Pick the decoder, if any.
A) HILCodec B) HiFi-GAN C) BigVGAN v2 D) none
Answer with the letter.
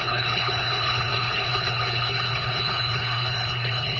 A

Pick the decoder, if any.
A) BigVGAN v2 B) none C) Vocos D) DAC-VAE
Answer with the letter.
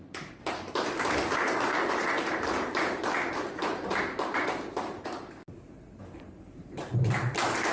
A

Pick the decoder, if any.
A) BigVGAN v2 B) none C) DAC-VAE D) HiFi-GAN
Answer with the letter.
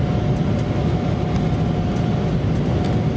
B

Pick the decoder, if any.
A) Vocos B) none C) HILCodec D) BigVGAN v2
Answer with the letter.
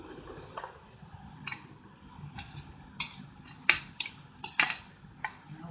D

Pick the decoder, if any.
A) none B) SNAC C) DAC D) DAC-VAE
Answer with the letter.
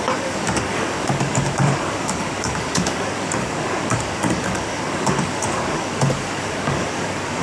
C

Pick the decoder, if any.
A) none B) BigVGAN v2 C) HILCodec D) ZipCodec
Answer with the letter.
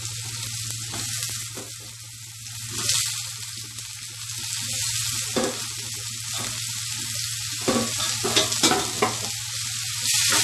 A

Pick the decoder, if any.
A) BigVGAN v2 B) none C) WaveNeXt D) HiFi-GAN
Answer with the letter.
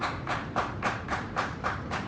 A